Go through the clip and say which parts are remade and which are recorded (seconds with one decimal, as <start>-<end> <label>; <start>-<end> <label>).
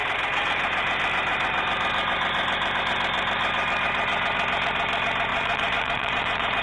0.0-5.3 recorded; 5.3-6.6 remade